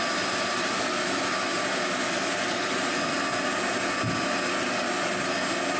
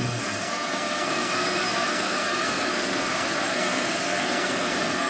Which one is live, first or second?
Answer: first